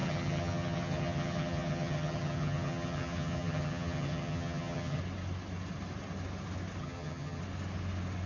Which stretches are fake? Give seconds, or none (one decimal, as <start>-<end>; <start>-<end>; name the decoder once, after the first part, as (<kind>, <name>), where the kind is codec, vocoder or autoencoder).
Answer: 0.0-5.0 (vocoder, HiFi-GAN); 6.8-7.4